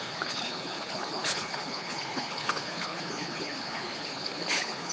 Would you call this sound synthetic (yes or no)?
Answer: yes